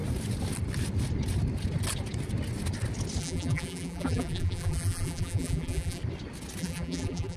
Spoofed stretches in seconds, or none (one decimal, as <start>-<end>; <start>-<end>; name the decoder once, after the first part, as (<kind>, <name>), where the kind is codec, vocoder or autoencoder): 3.2-6.0 (vocoder, BigVGAN v2); 6.6-7.4